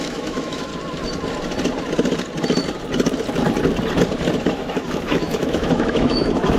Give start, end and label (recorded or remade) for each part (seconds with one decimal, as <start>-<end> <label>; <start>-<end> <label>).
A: 0.0-0.7 remade; 0.7-4.5 recorded; 4.5-6.6 remade